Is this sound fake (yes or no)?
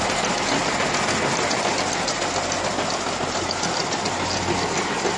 no